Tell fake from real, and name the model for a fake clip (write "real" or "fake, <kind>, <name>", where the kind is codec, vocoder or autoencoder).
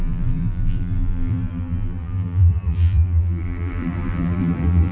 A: fake, vocoder, BigVGAN v2